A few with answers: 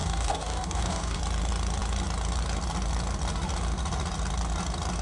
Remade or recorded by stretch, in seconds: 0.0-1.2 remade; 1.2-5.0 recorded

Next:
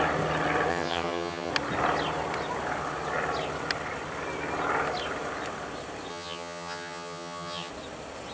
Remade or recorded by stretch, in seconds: 0.0-0.7 recorded; 0.7-1.5 remade; 1.5-6.1 recorded; 6.1-7.7 remade; 7.7-8.3 recorded

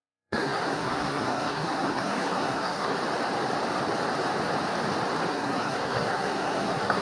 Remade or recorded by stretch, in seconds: 0.0-2.9 remade; 2.9-5.3 recorded; 5.3-7.0 remade

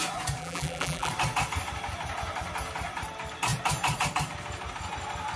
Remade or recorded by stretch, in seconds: 0.0-0.4 recorded; 0.4-1.1 remade; 1.1-5.4 recorded